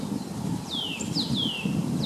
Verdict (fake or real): real